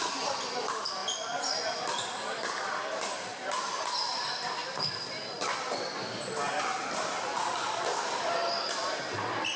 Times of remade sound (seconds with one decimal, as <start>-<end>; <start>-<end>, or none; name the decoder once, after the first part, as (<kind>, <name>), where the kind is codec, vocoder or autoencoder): 0.0-3.3 (vocoder, BigVGAN v2); 3.9-9.6